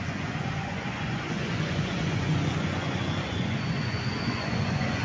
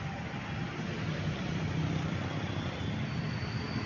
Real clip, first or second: second